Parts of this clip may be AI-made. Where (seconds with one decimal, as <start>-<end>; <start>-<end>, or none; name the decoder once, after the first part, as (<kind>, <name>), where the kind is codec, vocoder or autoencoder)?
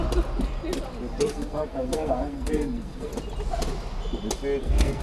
1.2-3.1 (codec, SNAC); 4.6-5.0